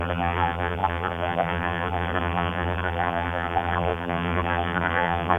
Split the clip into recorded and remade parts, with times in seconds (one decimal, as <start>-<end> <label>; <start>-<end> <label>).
0.0-5.4 remade